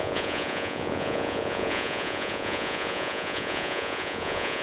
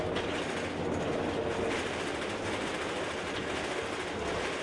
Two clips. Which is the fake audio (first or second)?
first